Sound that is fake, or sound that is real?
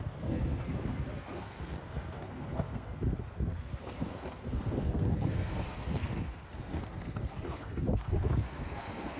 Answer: fake